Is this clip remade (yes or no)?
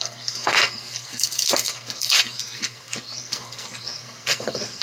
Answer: yes